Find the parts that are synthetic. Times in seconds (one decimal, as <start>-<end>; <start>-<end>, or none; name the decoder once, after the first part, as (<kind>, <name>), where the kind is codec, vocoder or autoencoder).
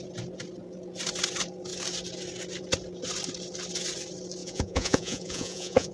4.4-5.9 (vocoder, Vocos)